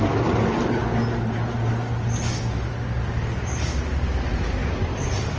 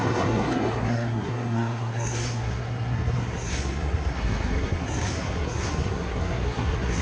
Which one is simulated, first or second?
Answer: second